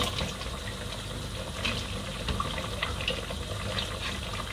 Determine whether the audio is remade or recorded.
recorded